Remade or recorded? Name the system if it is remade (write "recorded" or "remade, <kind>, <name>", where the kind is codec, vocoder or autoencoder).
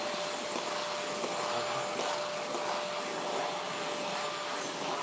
recorded